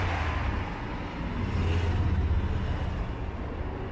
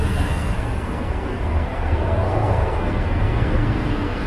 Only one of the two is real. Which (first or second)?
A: first